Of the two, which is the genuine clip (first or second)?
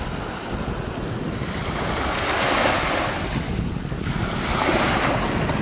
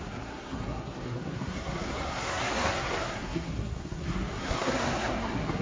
first